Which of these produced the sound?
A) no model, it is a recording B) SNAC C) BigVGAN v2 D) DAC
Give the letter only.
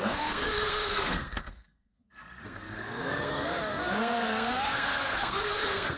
B